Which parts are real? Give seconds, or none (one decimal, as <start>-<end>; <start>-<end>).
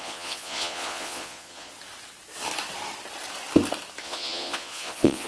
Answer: 1.7-4.0